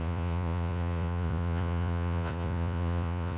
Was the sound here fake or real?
fake